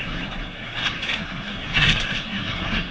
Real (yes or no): no